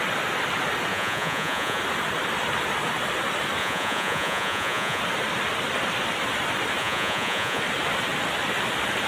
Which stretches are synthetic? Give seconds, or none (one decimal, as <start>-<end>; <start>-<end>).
0.9-1.8; 3.6-5.0; 6.8-7.6